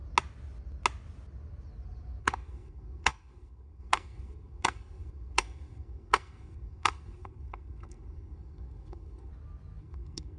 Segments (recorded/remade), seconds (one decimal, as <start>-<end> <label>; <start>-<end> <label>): 0.0-2.2 recorded; 2.2-9.3 remade; 9.3-9.8 recorded; 9.8-10.4 remade